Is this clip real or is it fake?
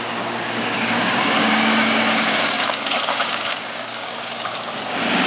fake